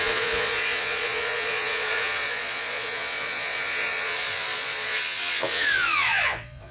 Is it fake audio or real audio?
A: fake